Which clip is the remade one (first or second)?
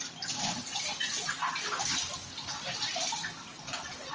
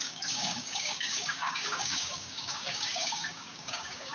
second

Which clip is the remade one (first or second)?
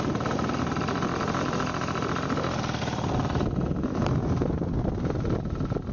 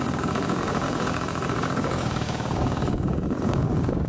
second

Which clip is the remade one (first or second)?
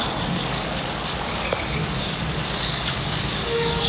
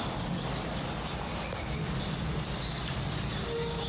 first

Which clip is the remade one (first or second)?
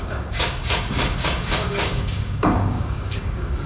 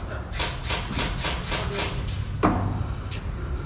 first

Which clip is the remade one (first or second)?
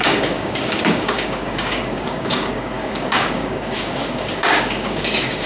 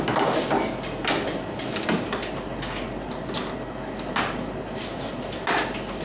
first